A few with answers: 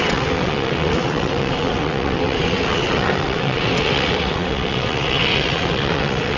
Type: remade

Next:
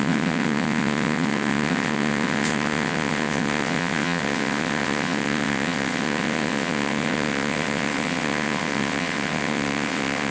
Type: remade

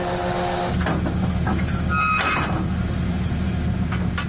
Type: recorded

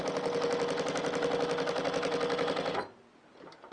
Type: recorded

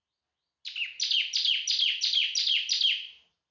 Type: recorded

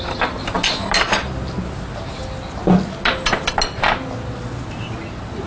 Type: recorded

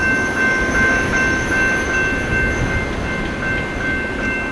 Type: recorded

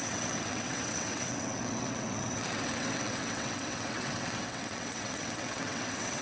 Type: remade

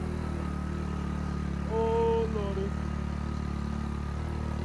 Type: recorded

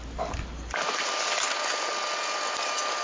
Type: recorded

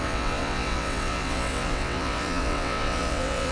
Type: remade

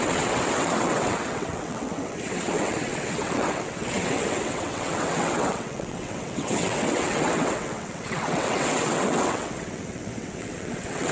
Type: remade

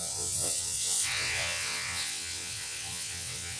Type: remade